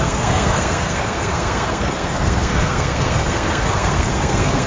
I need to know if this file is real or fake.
fake